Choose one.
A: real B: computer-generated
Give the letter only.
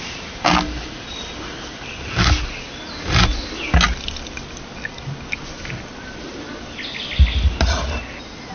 A